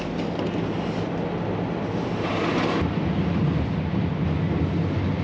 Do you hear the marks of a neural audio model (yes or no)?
no